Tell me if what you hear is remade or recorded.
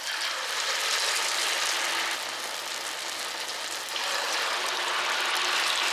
recorded